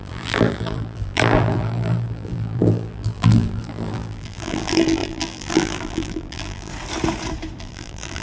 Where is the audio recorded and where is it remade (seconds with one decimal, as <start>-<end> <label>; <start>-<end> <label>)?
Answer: 0.0-6.7 remade; 6.7-7.6 recorded; 7.6-8.2 remade